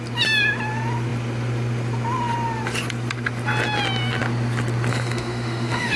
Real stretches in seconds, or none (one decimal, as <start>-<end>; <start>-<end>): 0.0-4.9